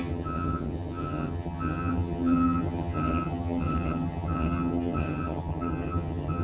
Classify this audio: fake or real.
fake